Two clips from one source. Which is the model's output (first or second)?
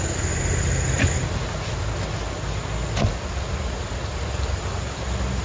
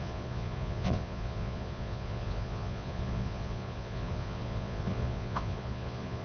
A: second